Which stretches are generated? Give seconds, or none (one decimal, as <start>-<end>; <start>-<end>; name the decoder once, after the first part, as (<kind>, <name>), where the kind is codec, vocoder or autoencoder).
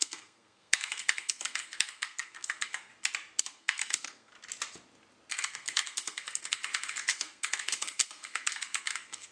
0.0-2.9 (codec, SNAC); 3.4-4.3; 5.3-9.3